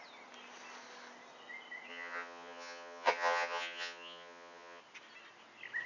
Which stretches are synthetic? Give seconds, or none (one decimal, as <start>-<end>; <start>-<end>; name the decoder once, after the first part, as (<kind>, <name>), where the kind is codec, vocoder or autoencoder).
1.9-4.8 (vocoder, HiFi-GAN)